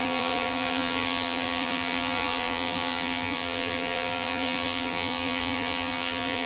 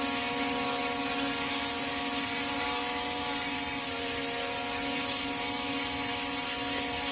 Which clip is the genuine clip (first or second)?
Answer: second